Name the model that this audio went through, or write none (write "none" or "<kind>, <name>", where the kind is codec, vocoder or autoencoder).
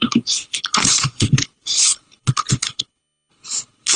codec, HILCodec